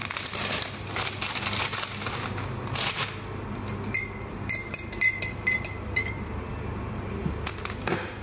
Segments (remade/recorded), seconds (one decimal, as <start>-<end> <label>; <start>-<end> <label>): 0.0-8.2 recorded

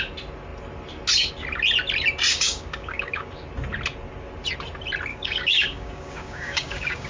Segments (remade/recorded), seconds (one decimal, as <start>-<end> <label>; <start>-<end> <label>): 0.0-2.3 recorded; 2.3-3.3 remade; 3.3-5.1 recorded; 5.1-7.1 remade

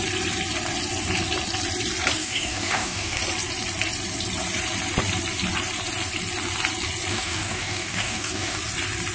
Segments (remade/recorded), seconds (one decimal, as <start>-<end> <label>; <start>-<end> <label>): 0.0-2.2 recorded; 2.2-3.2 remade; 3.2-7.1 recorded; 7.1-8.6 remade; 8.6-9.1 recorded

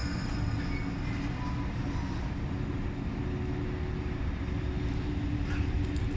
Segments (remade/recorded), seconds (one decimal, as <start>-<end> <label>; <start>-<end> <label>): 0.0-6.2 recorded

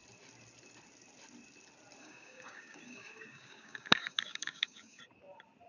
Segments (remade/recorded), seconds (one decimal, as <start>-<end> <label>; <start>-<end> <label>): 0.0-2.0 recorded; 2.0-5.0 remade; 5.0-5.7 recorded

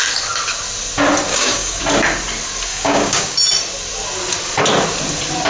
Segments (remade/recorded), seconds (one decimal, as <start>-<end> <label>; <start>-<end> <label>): 0.0-1.3 recorded; 1.3-1.8 remade; 1.8-2.7 recorded; 2.7-3.5 remade; 3.5-5.5 recorded